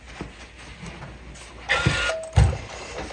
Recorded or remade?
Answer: recorded